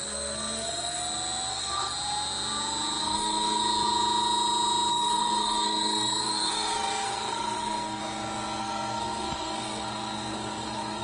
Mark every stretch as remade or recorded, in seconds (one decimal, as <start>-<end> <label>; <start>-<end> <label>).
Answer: 0.0-1.0 remade; 1.0-1.5 recorded; 1.5-1.9 remade; 1.9-3.0 recorded; 3.0-3.6 remade; 3.6-4.9 recorded; 4.9-8.0 remade; 8.0-8.6 recorded; 8.6-11.0 remade